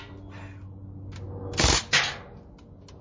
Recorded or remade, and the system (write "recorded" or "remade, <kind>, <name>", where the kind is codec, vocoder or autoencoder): recorded